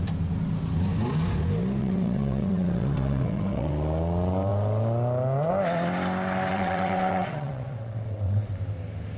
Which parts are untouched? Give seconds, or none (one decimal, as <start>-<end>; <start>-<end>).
0.0-1.8; 3.7-6.5; 8.5-9.2